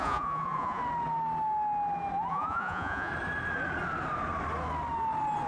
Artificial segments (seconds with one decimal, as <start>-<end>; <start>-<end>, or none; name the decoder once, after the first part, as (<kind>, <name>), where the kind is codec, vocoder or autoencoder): 0.0-0.8 (vocoder, Vocos); 2.3-3.1